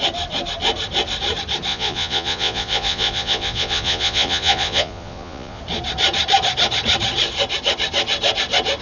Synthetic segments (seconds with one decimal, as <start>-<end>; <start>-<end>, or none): 1.7-5.6